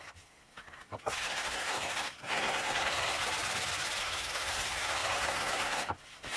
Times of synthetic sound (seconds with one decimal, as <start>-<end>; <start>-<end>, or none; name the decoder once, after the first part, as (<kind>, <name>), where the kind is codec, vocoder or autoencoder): 0.0-3.2 (codec, SNAC); 4.0-6.4